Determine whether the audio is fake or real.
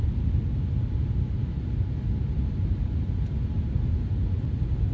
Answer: real